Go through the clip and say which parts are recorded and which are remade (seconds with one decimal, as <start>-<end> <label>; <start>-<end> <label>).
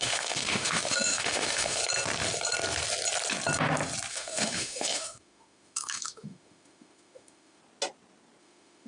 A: 0.0-1.8 remade; 1.8-4.1 recorded; 4.1-7.6 remade; 7.6-8.4 recorded; 8.4-8.9 remade